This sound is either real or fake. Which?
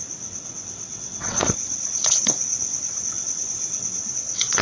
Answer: fake